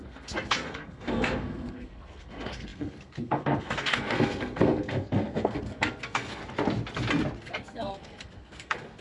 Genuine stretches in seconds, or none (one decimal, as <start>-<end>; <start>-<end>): 6.4-7.4